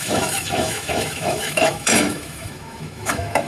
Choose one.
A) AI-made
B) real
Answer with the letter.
A